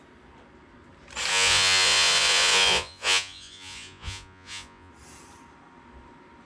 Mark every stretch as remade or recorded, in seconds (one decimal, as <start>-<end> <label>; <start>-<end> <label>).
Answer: 0.0-1.3 recorded; 1.3-4.9 remade; 4.9-6.5 recorded